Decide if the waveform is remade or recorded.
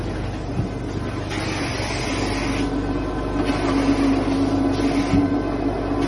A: recorded